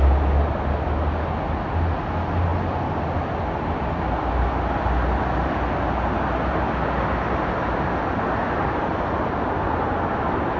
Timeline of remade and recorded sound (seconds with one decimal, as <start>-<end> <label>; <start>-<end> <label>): 0.0-10.6 recorded